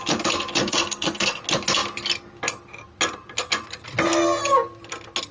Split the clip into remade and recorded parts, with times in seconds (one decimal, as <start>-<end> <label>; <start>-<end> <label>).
0.0-0.6 recorded; 0.6-1.4 remade; 1.4-5.3 recorded